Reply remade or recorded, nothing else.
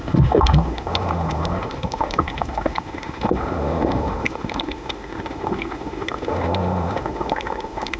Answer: remade